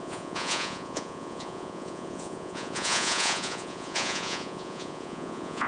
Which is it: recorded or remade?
remade